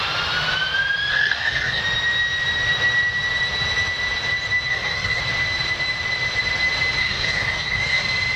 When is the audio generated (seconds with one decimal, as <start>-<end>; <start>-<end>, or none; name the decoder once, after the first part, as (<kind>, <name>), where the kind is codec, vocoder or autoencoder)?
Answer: 1.1-1.8 (codec, DAC); 4.7-5.2; 7.0-8.0